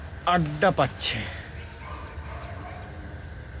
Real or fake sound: real